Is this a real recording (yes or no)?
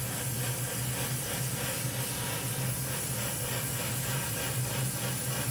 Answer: yes